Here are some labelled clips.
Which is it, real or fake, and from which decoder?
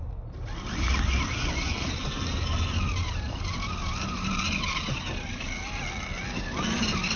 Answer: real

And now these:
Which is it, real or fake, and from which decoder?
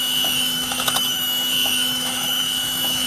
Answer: fake, autoencoder, DAC-VAE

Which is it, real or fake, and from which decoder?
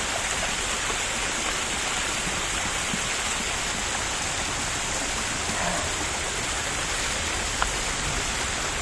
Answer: real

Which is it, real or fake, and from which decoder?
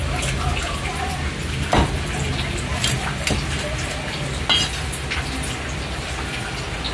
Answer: real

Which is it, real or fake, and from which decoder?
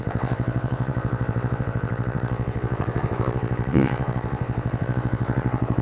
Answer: fake, vocoder, WaveNeXt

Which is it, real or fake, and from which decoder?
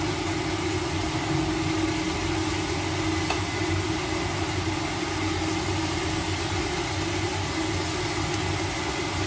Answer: real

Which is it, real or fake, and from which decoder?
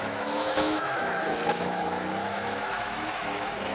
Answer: fake, autoencoder, DAC-VAE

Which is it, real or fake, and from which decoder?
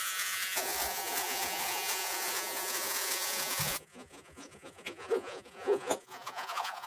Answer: fake, vocoder, Vocos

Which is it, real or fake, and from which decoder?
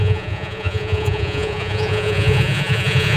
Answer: fake, vocoder, Vocos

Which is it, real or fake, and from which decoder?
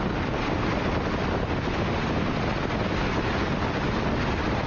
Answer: real